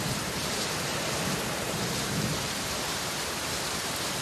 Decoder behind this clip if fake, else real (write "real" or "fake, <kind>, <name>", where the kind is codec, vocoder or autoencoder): fake, vocoder, BigVGAN v2